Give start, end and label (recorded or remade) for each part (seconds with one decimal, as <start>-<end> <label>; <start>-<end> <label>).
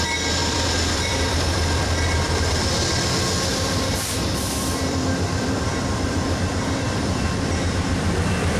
0.0-0.4 recorded; 0.4-2.5 remade; 2.5-3.5 recorded; 3.5-8.1 remade; 8.1-8.6 recorded